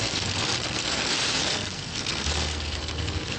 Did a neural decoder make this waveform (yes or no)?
yes